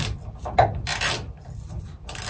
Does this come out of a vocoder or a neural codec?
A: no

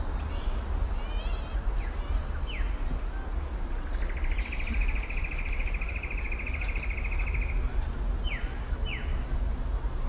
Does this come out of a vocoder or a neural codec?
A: no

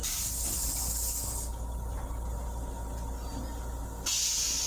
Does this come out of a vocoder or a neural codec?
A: no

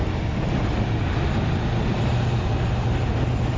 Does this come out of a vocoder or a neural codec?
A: no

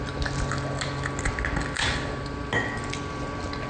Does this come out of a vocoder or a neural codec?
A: no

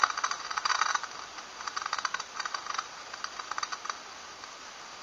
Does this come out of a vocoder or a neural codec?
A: no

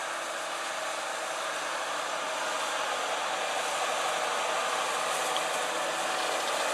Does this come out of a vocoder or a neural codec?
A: no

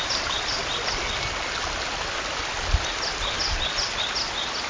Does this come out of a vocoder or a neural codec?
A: no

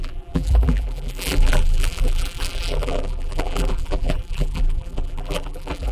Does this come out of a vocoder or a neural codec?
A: yes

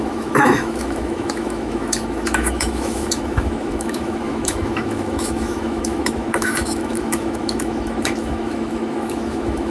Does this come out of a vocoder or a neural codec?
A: yes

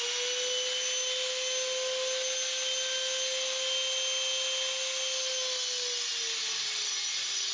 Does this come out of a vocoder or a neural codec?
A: no